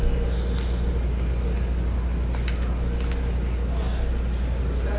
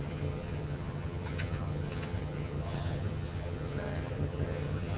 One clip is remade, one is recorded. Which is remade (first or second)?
second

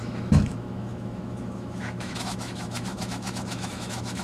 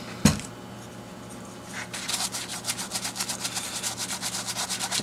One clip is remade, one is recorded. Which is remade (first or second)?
first